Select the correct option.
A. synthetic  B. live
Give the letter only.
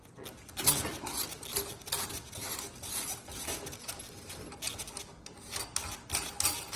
B